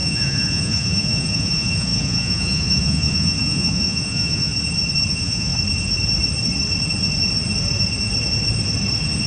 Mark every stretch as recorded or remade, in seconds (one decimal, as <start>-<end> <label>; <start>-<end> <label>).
0.0-4.5 remade; 4.5-5.1 recorded; 5.1-5.5 remade; 5.5-9.3 recorded

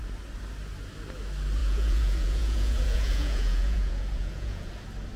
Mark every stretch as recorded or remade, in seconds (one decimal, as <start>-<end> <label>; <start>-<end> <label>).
0.0-1.6 recorded; 1.6-4.7 remade; 4.7-5.2 recorded